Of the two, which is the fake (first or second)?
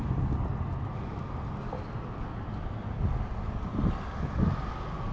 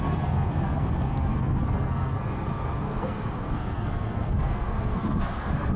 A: second